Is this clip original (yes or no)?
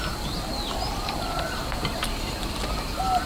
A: yes